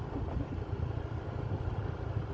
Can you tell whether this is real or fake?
real